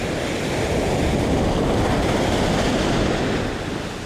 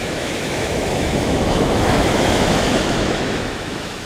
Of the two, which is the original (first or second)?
first